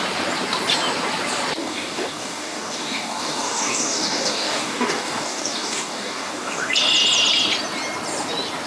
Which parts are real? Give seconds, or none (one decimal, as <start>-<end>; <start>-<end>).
0.0-1.6; 6.7-8.7